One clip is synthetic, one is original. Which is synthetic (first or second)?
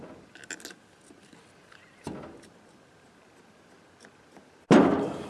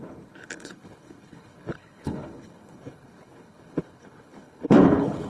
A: second